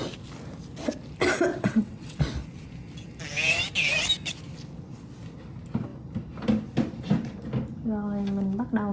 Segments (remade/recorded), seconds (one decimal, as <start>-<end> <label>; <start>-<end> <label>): 0.0-1.5 recorded; 1.5-2.2 remade; 2.2-8.9 recorded